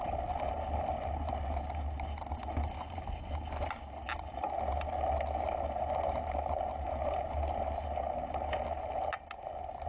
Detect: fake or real real